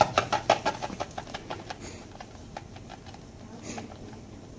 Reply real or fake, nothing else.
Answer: real